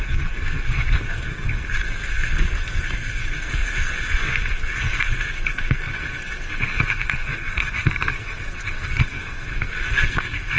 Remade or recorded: remade